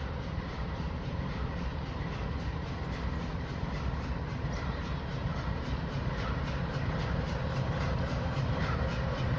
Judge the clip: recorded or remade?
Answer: remade